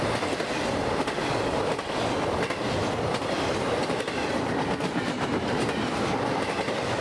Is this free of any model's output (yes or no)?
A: no